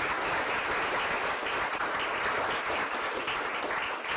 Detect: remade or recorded recorded